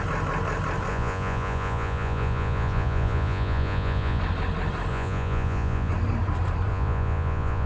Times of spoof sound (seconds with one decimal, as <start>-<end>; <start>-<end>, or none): 0.9-4.2; 4.9-5.9; 6.7-7.7